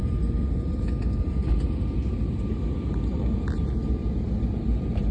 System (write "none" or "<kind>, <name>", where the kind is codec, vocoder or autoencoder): none